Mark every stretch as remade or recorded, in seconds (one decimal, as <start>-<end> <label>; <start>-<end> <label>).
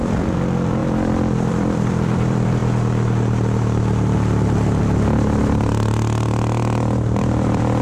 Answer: 0.0-0.8 remade; 0.8-1.5 recorded; 1.5-2.6 remade; 2.6-7.3 recorded; 7.3-7.8 remade